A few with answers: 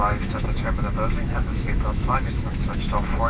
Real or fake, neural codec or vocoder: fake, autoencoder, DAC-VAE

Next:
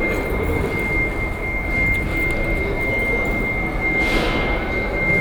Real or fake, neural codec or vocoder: real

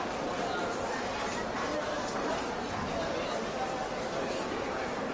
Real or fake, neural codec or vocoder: real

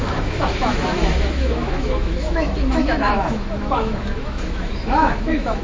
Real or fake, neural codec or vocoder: fake, autoencoder, DAC-VAE